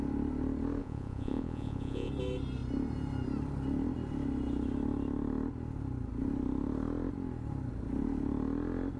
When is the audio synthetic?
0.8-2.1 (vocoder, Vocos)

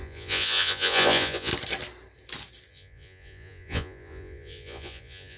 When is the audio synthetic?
0.0-1.5 (vocoder, Vocos); 2.7-5.4

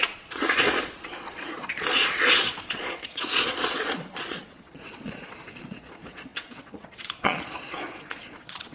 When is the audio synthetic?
0.0-8.7 (vocoder, Vocos)

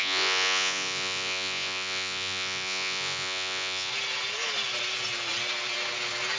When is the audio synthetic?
0.0-3.9 (vocoder, Vocos)

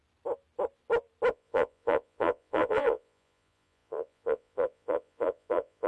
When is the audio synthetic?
1.3-5.9 (vocoder, Vocos)

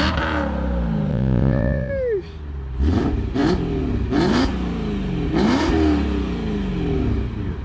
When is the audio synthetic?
1.1-1.9 (vocoder, Vocos)